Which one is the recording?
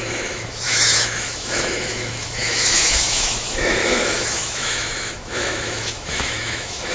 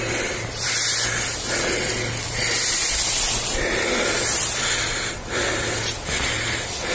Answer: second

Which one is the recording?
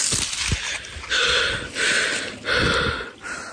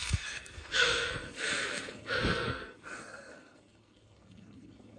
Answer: first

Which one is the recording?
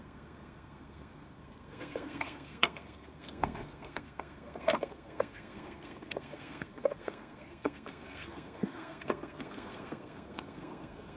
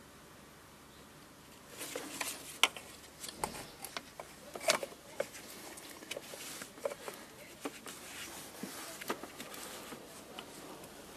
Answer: second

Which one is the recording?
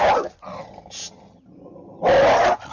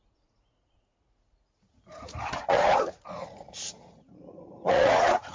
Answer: first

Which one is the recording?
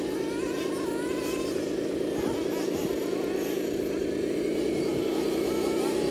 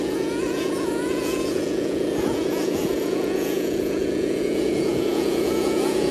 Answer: first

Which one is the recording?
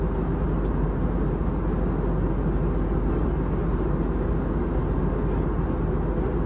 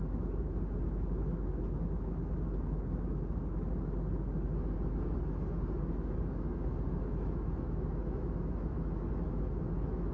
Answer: first